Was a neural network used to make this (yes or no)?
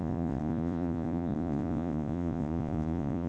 yes